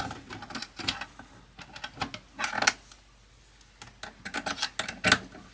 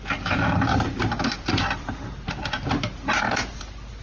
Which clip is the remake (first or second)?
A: second